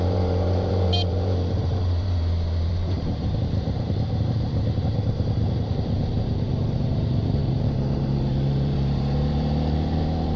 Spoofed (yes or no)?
yes